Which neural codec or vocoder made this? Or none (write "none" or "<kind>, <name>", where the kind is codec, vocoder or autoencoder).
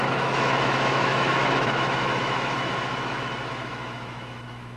autoencoder, DAC-VAE